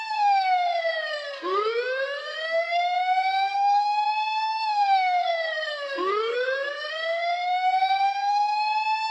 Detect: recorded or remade remade